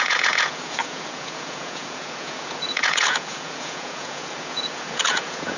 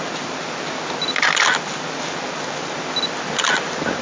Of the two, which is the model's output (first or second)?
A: first